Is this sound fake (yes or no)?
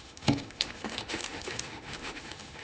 yes